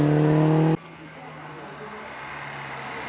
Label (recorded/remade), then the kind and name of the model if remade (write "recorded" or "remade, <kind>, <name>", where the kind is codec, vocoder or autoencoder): recorded